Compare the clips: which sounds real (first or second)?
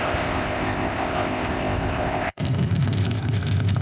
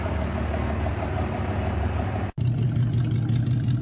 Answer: second